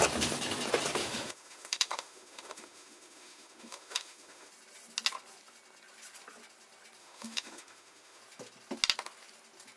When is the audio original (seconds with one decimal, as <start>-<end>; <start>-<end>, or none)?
0.0-1.0; 4.5-7.0; 8.2-9.8